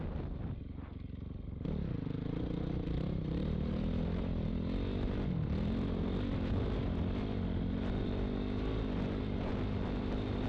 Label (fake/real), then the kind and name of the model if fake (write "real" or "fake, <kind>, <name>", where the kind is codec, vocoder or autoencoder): real